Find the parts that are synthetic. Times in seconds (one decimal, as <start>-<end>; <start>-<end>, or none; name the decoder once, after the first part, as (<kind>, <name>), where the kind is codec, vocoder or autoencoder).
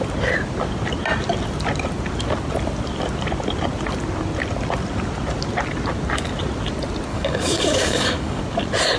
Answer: 7.1-8.4 (codec, DAC)